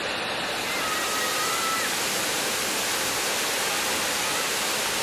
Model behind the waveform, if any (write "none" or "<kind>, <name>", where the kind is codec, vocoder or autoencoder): none